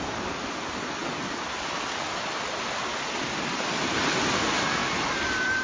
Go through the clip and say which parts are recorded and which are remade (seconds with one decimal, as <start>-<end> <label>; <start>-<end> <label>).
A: 0.0-5.6 recorded